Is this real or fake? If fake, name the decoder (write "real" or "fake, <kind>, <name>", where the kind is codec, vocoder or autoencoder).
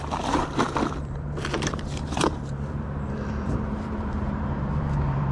fake, vocoder, BigVGAN v2